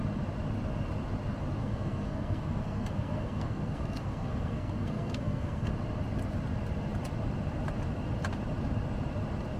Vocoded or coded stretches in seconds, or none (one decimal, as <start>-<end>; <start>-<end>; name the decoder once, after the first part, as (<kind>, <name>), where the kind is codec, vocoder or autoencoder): 1.6-5.7 (codec, SNAC)